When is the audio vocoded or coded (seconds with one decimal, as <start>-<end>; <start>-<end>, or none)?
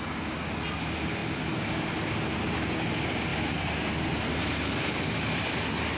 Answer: 3.3-5.1